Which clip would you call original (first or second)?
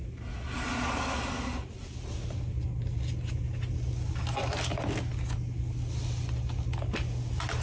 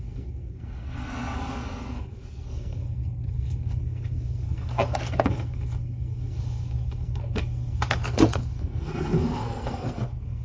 first